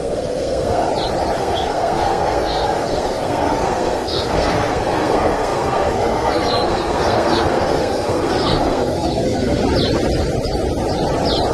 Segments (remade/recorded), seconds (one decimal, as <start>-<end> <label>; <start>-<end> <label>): 0.0-0.9 remade; 0.9-1.4 recorded; 1.4-9.6 remade; 9.6-11.5 recorded